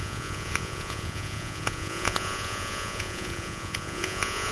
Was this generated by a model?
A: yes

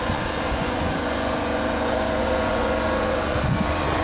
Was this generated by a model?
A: yes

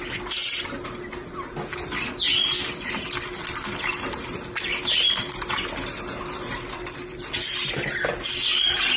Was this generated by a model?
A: no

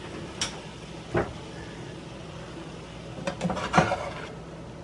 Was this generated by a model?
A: no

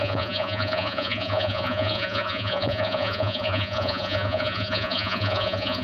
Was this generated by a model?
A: yes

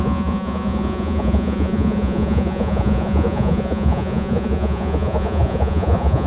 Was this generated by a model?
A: yes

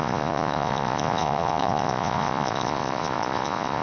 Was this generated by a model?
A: yes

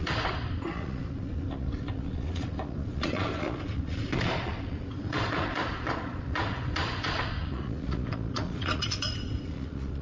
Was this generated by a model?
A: yes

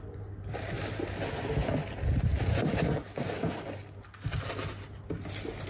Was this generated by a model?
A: no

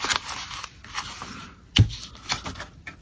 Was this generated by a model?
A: no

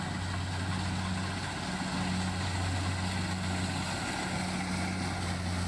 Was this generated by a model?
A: no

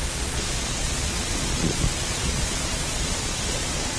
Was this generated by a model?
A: yes